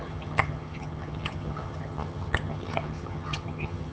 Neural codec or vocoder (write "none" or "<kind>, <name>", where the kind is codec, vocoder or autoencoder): vocoder, HiFi-GAN